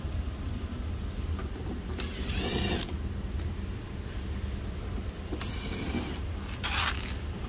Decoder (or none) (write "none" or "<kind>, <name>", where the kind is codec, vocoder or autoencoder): none